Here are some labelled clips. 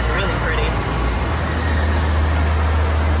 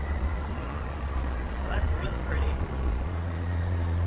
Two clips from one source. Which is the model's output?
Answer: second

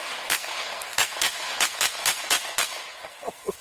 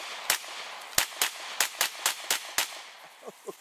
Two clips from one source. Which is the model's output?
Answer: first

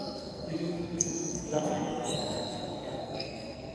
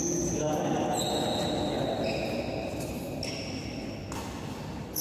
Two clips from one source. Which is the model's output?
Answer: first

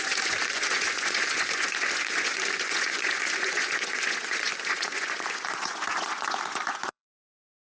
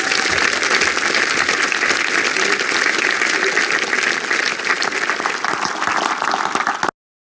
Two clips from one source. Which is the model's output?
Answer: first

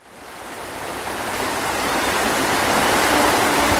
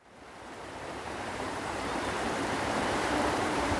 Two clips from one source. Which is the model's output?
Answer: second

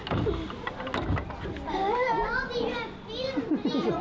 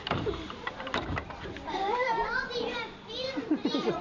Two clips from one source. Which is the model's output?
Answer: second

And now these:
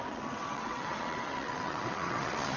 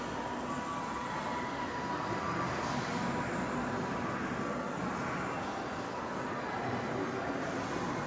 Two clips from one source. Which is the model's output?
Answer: first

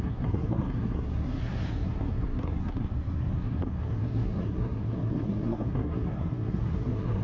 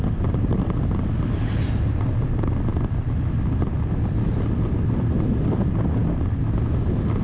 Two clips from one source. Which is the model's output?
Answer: first